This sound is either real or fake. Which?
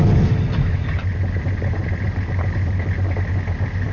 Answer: real